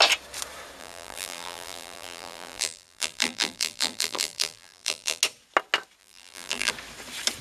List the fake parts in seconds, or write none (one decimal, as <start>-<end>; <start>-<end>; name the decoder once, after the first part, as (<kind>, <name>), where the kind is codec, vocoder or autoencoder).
0.8-5.2 (vocoder, BigVGAN v2); 6.0-6.7